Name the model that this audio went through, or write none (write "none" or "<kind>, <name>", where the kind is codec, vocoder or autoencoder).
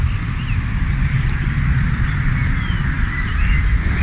none